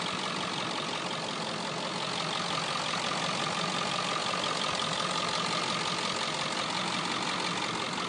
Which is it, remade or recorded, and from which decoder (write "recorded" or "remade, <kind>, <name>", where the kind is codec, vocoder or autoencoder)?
recorded